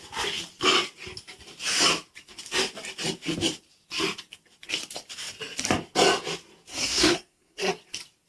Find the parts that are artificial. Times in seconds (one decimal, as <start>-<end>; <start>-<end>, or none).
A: 6.7-7.7